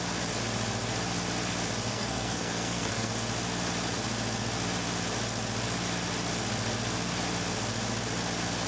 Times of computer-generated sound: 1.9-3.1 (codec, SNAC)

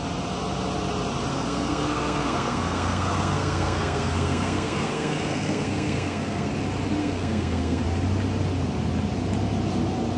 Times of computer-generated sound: 1.3-6.5 (codec, SNAC); 7.0-7.8

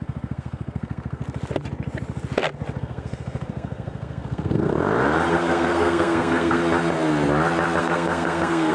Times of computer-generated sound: 0.0-1.2 (codec, SNAC); 2.8-4.7; 5.3-6.6; 7.8-8.7